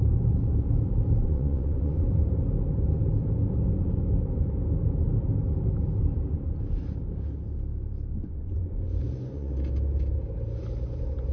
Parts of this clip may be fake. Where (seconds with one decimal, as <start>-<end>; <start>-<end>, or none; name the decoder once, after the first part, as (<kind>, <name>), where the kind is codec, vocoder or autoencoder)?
1.2-2.1 (vocoder, Vocos); 8.1-9.5

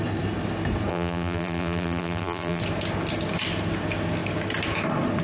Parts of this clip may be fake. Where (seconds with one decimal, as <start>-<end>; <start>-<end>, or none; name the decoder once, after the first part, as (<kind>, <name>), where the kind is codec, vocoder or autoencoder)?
0.9-2.6 (vocoder, BigVGAN v2)

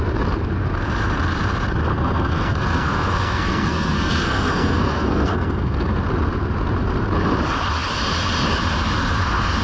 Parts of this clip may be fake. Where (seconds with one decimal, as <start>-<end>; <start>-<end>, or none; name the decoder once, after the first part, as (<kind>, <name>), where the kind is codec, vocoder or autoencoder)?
1.9-6.0 (codec, SNAC)

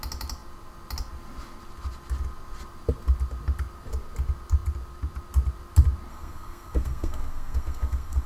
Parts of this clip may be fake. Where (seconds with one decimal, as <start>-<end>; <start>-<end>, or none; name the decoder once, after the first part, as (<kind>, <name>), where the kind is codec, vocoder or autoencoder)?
6.1-8.3 (codec, SNAC)

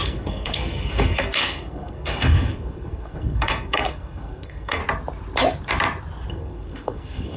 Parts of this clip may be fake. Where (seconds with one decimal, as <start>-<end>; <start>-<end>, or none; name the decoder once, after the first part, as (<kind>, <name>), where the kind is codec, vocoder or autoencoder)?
0.0-4.8 (codec, SNAC); 6.3-7.4

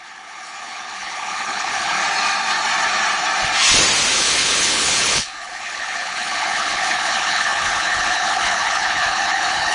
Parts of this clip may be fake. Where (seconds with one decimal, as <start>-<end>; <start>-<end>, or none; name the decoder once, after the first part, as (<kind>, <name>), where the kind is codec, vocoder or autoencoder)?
0.0-2.0 (codec, HILCodec); 4.1-9.7

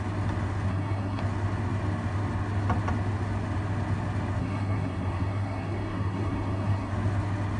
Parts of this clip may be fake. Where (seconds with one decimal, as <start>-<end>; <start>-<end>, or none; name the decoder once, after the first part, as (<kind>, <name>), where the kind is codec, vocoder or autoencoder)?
0.7-1.2 (codec, SNAC); 4.4-6.9